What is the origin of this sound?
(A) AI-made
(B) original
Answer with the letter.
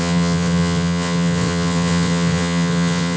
A